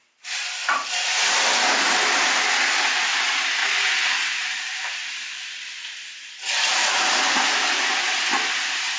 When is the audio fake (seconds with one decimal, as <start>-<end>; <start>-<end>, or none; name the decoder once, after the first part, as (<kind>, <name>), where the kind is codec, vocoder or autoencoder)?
0.0-3.6 (vocoder, BigVGAN v2); 4.5-9.0

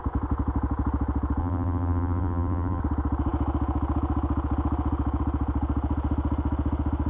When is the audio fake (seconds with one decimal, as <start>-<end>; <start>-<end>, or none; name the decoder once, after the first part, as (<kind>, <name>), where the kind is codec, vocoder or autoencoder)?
1.4-2.8 (vocoder, BigVGAN v2)

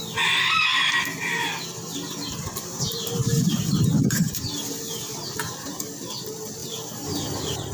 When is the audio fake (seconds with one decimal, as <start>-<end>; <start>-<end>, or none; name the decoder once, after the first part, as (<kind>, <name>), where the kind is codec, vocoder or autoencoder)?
2.7-4.6 (vocoder, BigVGAN v2); 6.6-7.7

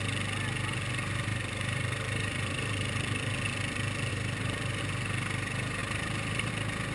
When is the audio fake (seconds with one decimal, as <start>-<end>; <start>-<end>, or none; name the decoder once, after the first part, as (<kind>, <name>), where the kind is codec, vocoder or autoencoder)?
1.3-2.9 (vocoder, BigVGAN v2); 4.1-4.8; 5.8-6.5

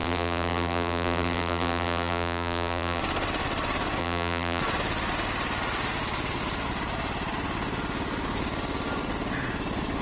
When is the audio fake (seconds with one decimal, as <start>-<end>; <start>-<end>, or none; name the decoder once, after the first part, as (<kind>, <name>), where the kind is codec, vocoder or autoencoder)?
0.0-3.0 (vocoder, BigVGAN v2); 4.0-4.6

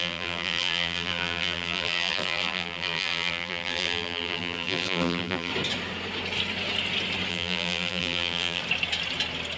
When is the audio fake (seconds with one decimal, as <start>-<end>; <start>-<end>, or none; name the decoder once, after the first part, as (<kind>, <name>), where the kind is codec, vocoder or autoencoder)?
0.0-5.5 (vocoder, BigVGAN v2); 7.3-8.6